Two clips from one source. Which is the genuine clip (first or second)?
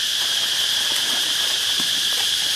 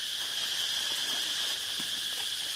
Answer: second